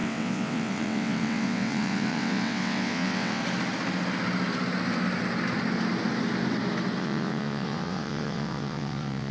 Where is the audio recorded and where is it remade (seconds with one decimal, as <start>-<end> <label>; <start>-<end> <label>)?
0.0-3.4 remade; 3.4-7.0 recorded; 7.0-9.3 remade